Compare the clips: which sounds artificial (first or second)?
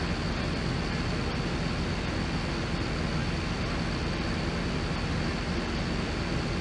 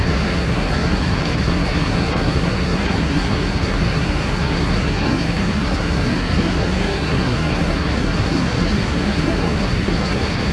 second